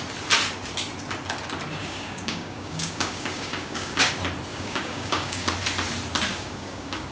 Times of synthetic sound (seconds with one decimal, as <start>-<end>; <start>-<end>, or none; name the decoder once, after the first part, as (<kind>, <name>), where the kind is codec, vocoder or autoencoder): 1.8-4.1 (codec, DAC); 4.5-5.5; 6.3-7.1